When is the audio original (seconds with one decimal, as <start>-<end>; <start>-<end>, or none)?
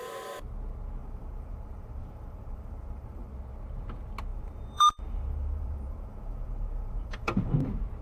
0.0-1.0; 3.3-4.3; 7.5-8.0